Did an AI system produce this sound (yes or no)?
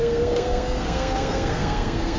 yes